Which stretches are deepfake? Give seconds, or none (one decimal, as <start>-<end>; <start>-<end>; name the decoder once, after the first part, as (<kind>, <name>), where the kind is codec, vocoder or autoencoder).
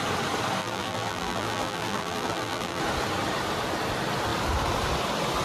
0.6-2.8 (vocoder, BigVGAN v2)